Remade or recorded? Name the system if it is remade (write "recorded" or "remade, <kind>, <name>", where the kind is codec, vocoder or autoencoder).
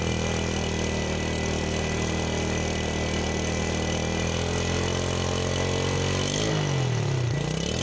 recorded